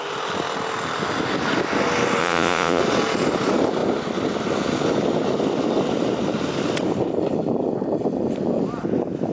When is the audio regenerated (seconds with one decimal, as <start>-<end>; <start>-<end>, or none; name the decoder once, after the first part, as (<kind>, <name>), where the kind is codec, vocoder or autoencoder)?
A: 2.2-2.8 (vocoder, Vocos)